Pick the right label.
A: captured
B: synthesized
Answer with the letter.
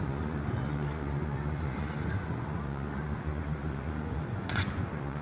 B